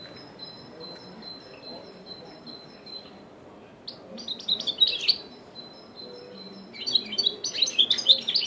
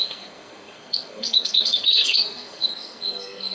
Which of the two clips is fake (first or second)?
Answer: second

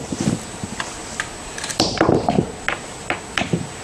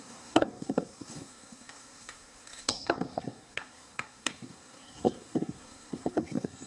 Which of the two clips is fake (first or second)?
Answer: second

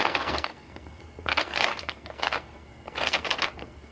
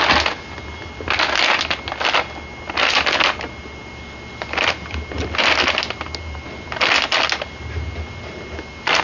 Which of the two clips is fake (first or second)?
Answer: first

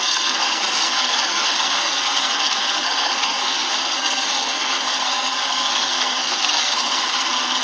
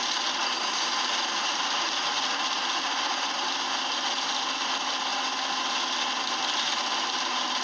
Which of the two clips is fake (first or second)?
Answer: first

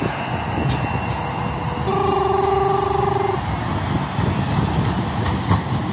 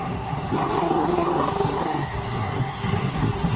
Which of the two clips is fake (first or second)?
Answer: second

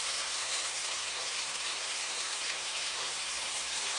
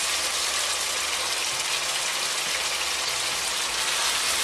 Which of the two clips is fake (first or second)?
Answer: first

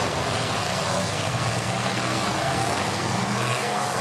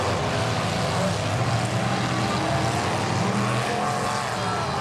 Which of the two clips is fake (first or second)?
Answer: first